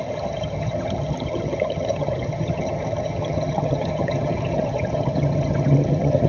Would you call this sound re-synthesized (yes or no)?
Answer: yes